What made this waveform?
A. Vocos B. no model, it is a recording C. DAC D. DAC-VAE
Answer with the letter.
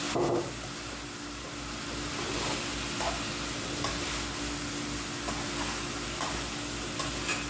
B